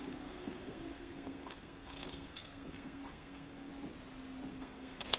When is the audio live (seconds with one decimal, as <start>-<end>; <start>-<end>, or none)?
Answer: 3.7-4.5